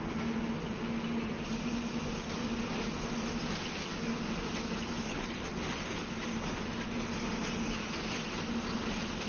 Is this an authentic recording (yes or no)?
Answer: yes